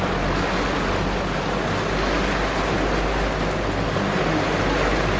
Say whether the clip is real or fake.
real